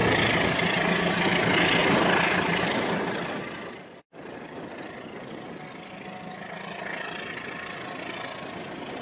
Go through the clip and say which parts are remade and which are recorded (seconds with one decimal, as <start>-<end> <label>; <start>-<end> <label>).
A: 0.0-0.8 remade; 0.8-1.8 recorded; 1.8-5.3 remade; 5.3-9.0 recorded